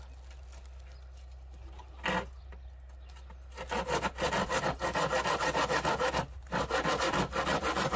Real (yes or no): yes